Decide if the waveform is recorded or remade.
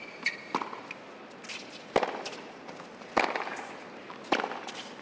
recorded